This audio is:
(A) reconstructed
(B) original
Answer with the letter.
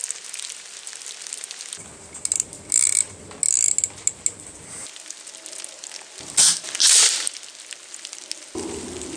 B